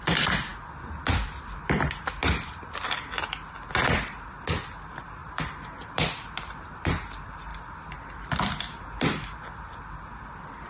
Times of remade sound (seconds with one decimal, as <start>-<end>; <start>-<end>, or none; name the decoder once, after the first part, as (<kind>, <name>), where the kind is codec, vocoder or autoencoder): none